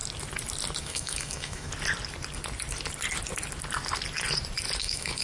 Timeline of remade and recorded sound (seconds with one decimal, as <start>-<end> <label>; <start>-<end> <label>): 0.0-0.8 recorded; 0.8-1.7 remade; 1.7-4.8 recorded; 4.8-5.2 remade